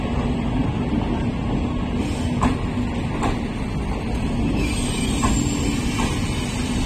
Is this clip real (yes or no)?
yes